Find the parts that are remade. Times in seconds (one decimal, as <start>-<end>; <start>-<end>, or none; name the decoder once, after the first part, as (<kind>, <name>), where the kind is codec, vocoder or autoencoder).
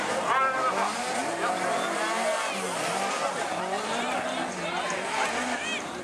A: none